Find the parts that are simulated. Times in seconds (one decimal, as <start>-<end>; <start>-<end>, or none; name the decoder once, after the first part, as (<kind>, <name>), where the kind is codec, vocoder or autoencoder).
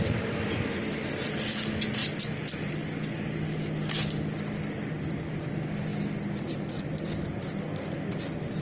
none